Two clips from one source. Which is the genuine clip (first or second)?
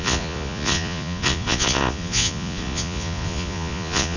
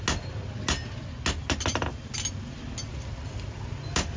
second